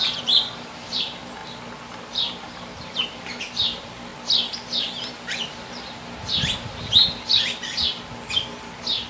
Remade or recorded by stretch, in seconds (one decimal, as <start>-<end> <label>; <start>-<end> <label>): 0.0-1.4 remade; 1.4-2.0 recorded; 2.0-4.1 remade; 4.1-5.0 recorded; 5.0-7.3 remade; 7.3-9.1 recorded